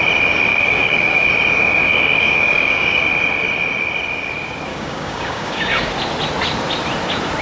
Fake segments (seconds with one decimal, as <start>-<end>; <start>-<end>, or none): 0.5-1.3; 1.9-3.0; 4.7-5.9